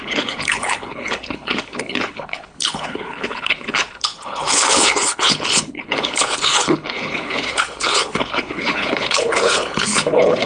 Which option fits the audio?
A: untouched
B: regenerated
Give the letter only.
B